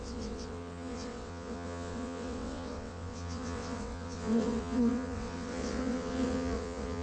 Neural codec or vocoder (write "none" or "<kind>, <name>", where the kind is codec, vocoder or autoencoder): vocoder, WaveNeXt